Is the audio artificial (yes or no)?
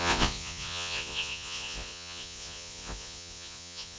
yes